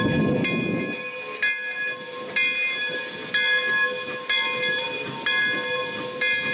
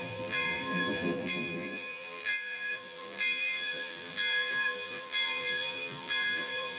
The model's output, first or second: second